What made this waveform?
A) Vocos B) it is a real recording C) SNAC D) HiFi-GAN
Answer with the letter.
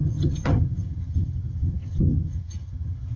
D